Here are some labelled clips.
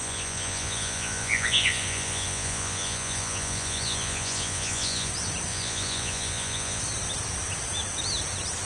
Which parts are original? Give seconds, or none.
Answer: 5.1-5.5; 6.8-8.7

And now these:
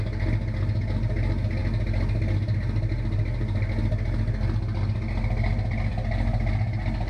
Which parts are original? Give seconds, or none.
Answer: 0.0-7.1